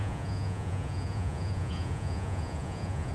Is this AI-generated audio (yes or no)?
yes